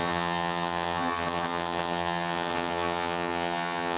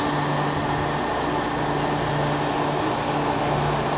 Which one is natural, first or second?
second